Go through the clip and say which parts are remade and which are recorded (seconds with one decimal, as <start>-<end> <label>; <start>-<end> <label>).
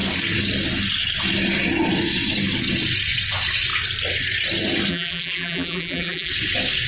0.0-4.9 recorded; 4.9-6.3 remade; 6.3-6.9 recorded